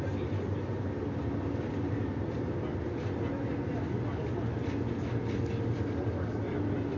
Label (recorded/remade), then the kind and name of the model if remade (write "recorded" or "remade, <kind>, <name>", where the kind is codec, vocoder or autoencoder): recorded